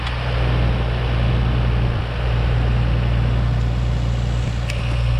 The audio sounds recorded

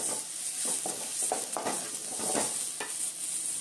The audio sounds recorded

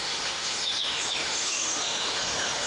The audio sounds remade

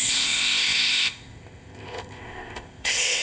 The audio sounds remade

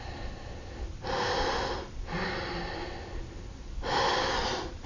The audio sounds recorded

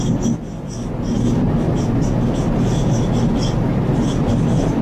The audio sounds recorded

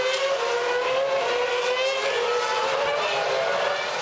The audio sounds recorded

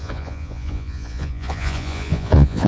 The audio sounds remade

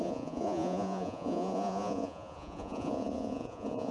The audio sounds remade